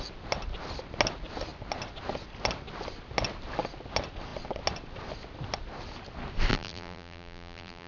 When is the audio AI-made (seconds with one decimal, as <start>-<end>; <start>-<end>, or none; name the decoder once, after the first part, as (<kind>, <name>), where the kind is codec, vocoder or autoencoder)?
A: 6.5-7.9 (vocoder, BigVGAN v2)